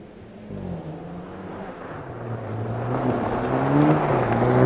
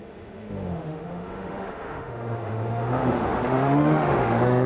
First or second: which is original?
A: first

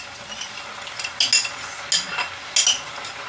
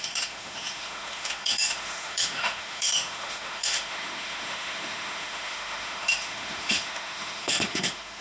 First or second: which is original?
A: first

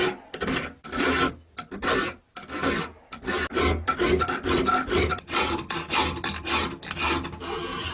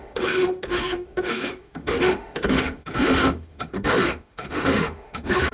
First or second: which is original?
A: first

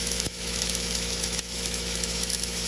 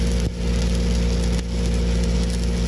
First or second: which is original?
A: second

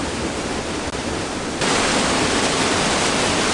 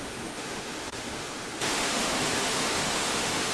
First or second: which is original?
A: first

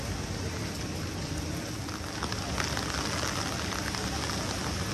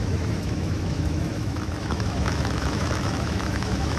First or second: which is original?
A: first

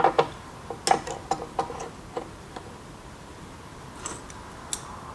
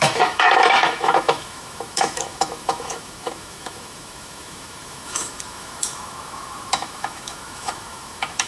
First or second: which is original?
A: first